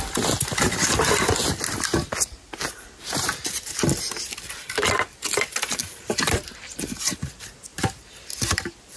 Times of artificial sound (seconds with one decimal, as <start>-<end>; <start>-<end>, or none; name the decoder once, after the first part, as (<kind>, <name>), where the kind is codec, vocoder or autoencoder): none